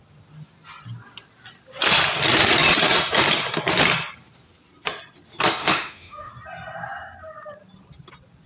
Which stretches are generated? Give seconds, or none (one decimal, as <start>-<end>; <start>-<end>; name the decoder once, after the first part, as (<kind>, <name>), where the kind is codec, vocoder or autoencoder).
5.6-6.3 (autoencoder, DAC-VAE)